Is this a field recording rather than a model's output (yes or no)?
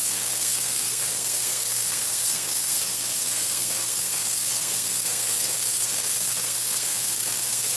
no